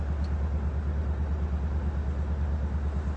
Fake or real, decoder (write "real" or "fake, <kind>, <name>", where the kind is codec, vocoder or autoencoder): real